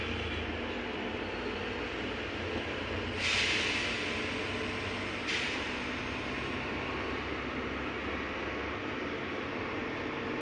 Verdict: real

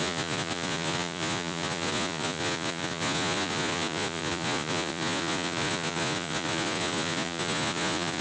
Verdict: fake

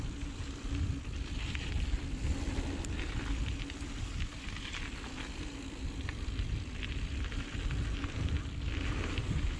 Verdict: real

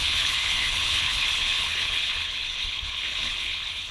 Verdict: fake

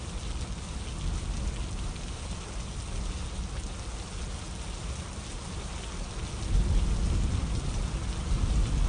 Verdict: real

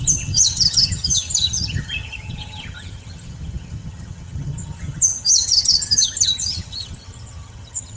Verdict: fake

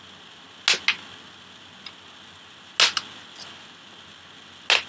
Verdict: real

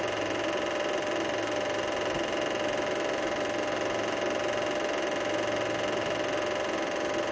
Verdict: real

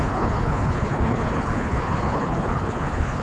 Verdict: fake